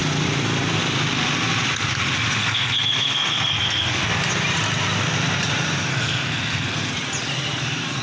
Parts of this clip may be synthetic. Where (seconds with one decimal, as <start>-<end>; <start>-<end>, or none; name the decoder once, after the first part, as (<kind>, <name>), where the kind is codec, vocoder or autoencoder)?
2.4-4.1 (codec, SNAC); 5.9-6.9